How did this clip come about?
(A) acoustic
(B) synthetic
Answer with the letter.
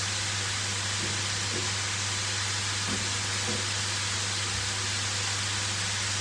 A